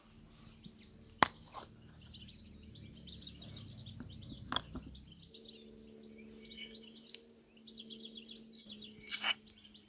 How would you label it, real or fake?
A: real